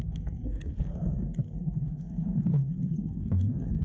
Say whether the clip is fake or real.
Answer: fake